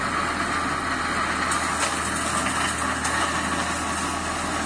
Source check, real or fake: real